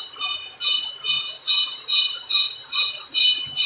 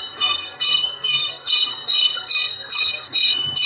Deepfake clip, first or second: second